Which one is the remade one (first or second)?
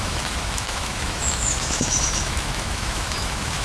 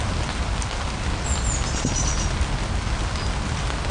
first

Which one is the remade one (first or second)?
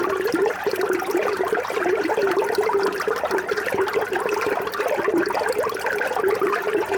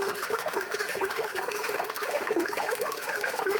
second